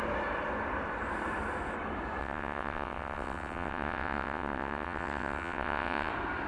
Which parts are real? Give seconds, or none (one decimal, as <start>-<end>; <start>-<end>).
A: 0.0-2.2; 6.1-6.5